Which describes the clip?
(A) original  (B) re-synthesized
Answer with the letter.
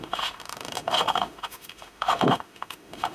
B